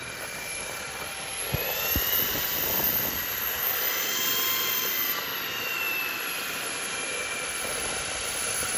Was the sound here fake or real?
fake